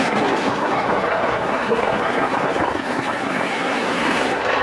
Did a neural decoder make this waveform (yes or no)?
yes